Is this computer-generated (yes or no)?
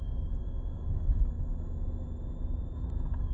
yes